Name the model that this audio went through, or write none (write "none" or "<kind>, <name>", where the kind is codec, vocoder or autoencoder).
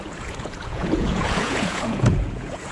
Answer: vocoder, Vocos